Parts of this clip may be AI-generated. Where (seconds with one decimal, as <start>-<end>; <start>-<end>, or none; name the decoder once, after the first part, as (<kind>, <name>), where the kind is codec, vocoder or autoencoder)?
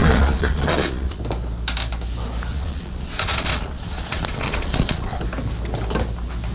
0.0-1.2 (vocoder, Vocos); 2.5-5.2